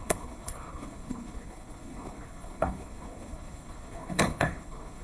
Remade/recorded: remade